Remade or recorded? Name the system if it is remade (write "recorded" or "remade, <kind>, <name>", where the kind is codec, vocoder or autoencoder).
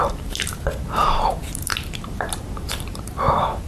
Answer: remade, vocoder, BigVGAN v2